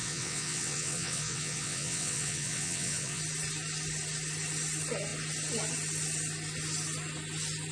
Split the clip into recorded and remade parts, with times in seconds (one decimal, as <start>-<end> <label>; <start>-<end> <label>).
0.0-3.2 remade; 3.2-7.7 recorded